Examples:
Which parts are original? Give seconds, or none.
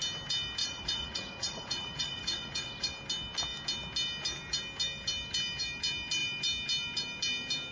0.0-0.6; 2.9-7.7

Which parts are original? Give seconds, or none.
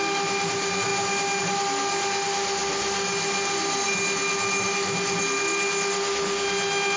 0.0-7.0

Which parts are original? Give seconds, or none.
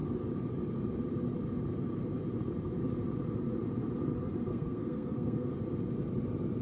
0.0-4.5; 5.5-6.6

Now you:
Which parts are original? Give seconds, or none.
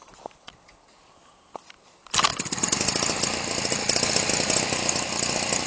0.0-5.7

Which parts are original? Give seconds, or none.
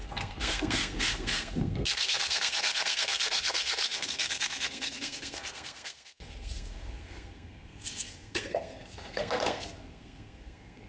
none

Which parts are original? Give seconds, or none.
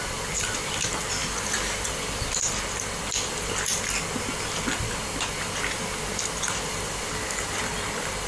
0.0-8.3